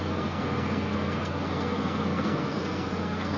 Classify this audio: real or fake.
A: fake